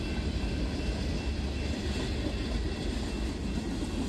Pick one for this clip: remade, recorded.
recorded